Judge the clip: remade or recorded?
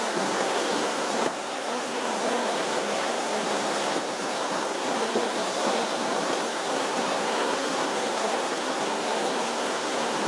remade